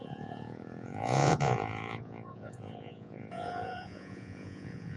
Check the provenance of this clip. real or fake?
fake